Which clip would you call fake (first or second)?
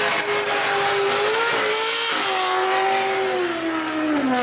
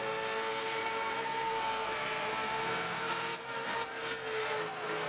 second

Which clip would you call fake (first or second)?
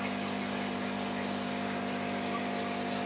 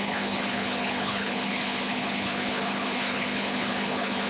second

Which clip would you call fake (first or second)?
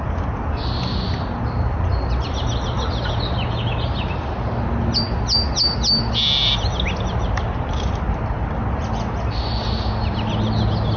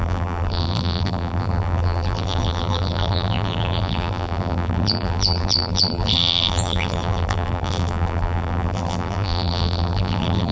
second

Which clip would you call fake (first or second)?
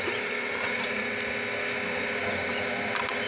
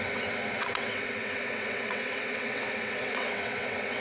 second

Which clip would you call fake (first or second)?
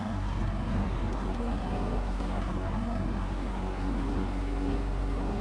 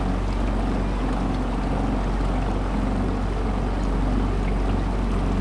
first